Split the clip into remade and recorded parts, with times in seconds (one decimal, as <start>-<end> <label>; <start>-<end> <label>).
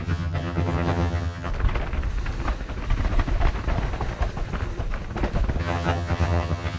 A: 0.0-1.5 remade; 1.5-5.6 recorded; 5.6-6.8 remade